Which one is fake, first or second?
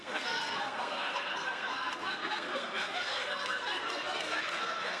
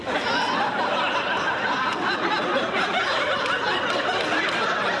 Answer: first